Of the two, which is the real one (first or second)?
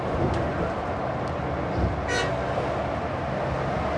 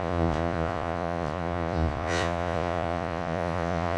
first